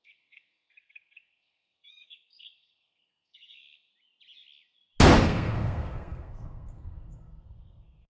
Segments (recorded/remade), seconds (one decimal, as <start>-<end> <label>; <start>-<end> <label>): 0.0-3.9 remade; 3.9-5.2 recorded; 5.2-8.2 remade